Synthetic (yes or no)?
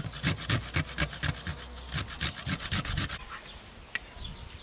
no